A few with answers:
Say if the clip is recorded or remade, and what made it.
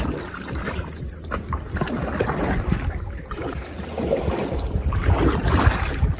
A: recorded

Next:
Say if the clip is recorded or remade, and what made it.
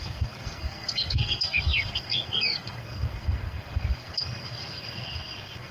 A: remade, codec, SNAC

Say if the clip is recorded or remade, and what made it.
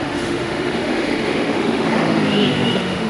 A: remade, autoencoder, DAC-VAE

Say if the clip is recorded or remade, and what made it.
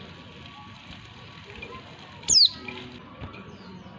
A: recorded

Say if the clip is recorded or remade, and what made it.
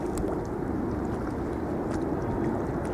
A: recorded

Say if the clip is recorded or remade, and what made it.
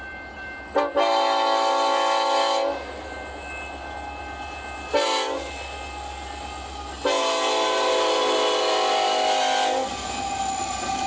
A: recorded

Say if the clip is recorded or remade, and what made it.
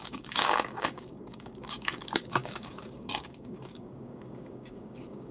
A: remade, codec, DAC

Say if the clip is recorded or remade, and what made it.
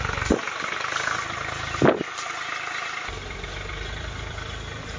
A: recorded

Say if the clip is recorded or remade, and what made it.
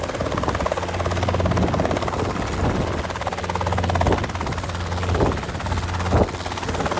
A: recorded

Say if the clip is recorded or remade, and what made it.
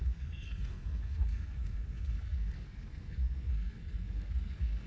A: remade, codec, SNAC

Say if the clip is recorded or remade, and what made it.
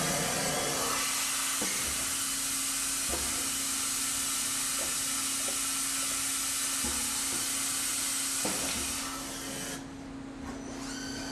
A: recorded